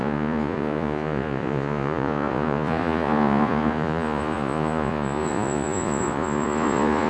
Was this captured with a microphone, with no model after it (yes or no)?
no